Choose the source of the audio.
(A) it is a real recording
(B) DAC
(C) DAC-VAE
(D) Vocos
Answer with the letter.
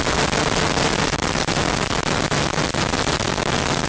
A